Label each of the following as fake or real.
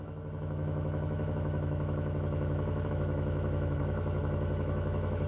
fake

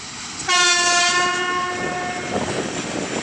real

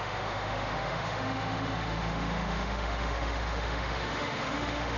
fake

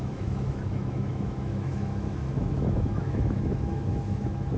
fake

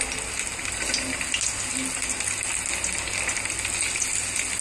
real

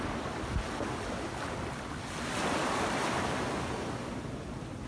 real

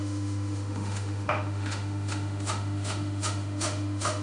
fake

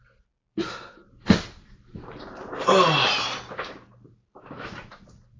real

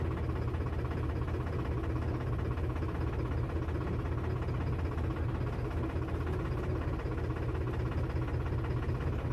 real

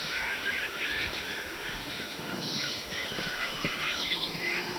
fake